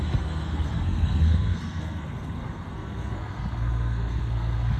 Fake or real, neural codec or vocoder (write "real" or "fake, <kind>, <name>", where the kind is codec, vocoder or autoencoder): fake, codec, SNAC